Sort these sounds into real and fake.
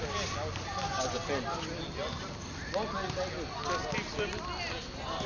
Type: real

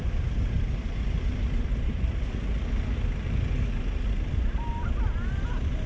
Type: real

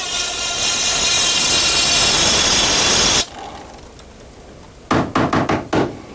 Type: real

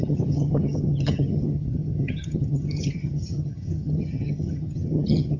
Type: fake